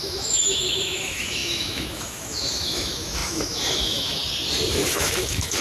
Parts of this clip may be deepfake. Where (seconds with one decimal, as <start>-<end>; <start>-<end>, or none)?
0.0-4.2; 4.9-5.6